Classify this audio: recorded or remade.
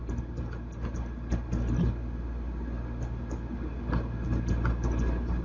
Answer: recorded